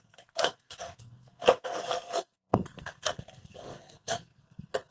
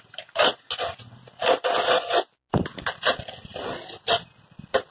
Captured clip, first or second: second